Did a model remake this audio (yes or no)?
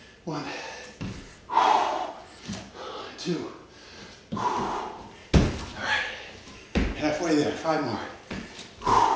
no